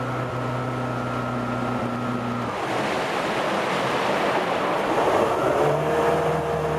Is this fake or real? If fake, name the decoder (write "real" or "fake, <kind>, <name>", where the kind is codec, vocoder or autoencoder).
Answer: real